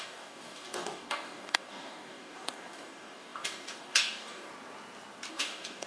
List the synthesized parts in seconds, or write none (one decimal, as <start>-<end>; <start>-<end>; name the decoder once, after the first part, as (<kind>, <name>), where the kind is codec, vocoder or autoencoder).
0.0-4.5 (codec, DAC); 5.3-5.9